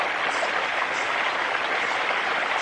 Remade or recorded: recorded